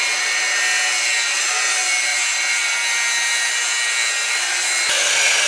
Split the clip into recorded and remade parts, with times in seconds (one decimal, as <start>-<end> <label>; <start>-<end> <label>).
0.0-5.5 recorded